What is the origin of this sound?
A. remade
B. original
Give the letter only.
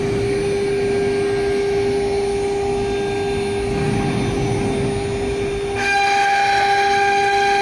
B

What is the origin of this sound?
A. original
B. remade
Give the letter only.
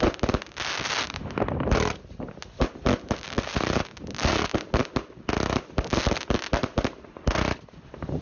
A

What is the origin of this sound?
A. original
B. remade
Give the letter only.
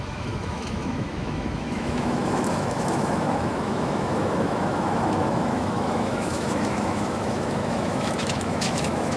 B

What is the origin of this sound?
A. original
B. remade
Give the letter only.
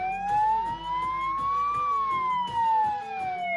A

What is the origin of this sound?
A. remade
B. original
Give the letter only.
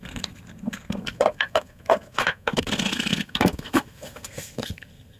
A